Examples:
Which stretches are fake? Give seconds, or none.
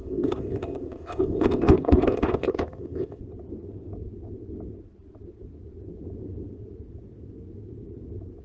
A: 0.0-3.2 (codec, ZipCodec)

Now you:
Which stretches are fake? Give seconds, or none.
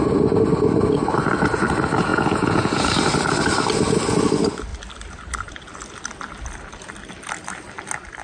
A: 2.1-2.8 (vocoder, Vocos)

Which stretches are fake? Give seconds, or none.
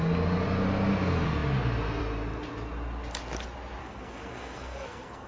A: 3.8-5.3 (codec, SNAC)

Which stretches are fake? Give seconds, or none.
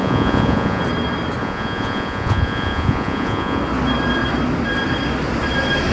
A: 0.0-0.8 (vocoder, Vocos); 1.4-3.6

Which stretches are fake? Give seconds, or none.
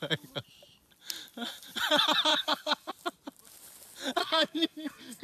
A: 2.3-2.9 (codec, SNAC); 4.2-5.2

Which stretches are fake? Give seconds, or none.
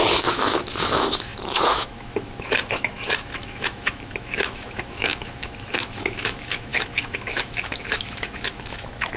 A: 0.0-9.2 (autoencoder, DAC-VAE)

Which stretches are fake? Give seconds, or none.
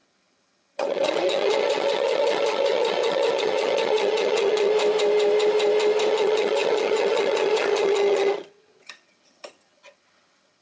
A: 0.0-4.7 (vocoder, HiFi-GAN); 6.1-10.6